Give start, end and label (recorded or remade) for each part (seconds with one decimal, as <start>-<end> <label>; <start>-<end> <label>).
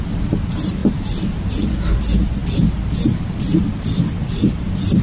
0.0-5.0 recorded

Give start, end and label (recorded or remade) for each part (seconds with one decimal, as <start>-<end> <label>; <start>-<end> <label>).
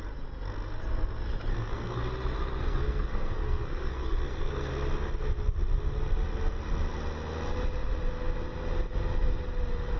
0.0-1.5 recorded; 1.5-2.0 remade; 2.0-2.6 recorded; 2.6-4.7 remade; 4.7-10.0 recorded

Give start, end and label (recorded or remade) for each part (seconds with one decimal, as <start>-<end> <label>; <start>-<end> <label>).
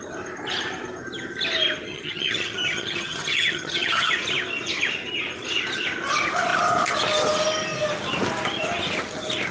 0.0-1.9 recorded; 1.9-4.1 remade; 4.1-9.5 recorded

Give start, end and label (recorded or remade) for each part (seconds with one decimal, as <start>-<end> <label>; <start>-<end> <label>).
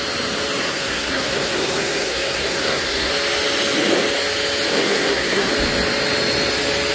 0.0-0.6 recorded; 0.6-3.1 remade; 3.1-4.7 recorded; 4.7-5.5 remade; 5.5-6.9 recorded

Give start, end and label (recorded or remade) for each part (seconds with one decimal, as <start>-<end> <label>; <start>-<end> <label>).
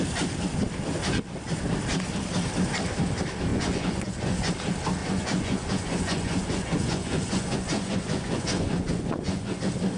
0.0-3.5 recorded; 3.5-4.5 remade; 4.5-5.0 recorded; 5.0-9.6 remade; 9.6-10.0 recorded